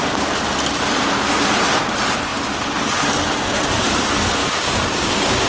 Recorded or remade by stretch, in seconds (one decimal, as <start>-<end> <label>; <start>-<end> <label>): 0.0-4.4 recorded; 4.4-5.5 remade